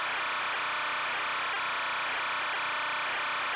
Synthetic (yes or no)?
no